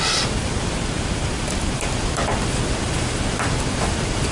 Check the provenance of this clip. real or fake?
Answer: real